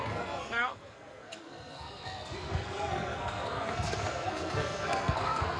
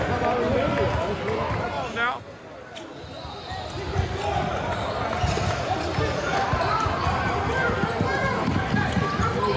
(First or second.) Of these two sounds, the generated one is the first